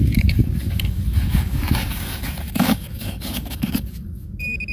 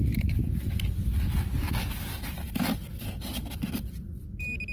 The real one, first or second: second